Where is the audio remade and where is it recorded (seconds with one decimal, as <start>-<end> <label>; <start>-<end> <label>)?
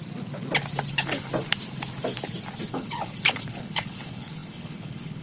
0.0-0.9 recorded; 0.9-1.3 remade; 1.3-2.7 recorded; 2.7-5.2 remade